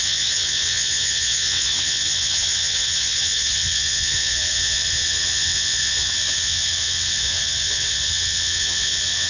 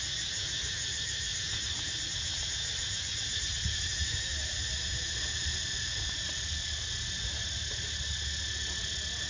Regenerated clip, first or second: first